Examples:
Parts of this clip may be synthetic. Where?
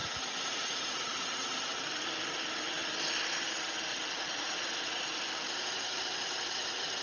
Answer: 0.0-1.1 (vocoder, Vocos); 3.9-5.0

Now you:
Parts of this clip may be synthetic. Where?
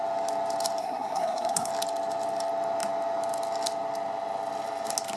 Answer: 0.8-1.7 (codec, SNAC)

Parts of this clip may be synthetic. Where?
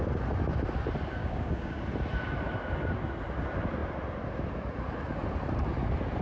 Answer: 1.2-1.8 (codec, DAC)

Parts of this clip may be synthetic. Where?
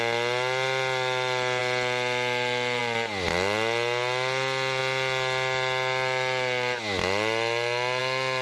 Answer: none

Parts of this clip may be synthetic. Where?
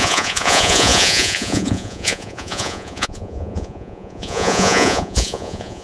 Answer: 0.0-5.8 (vocoder, Vocos)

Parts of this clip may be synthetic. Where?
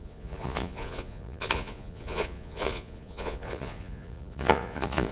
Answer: 0.0-5.1 (vocoder, Vocos)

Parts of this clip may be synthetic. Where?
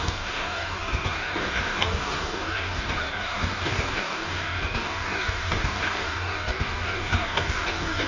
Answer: 0.0-8.1 (codec, DAC)